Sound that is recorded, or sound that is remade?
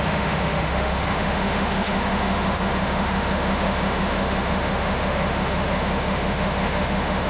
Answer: remade